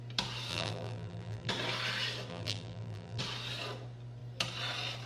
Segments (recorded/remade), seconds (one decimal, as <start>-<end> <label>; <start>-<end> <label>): 0.0-0.5 recorded; 0.5-1.5 remade; 1.5-2.3 recorded; 2.3-3.2 remade; 3.2-5.1 recorded